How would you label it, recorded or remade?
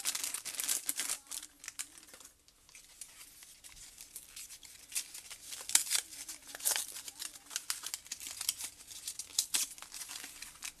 recorded